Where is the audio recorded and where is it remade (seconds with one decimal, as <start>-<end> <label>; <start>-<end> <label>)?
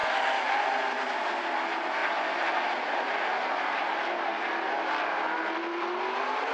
0.0-6.5 recorded